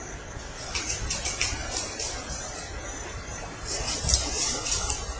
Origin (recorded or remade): recorded